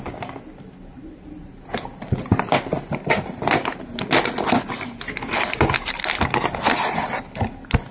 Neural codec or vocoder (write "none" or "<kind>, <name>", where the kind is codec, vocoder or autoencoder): none